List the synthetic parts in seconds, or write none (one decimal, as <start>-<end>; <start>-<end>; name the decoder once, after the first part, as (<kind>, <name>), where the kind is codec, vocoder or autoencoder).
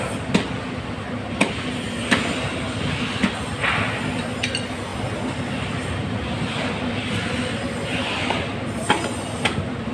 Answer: none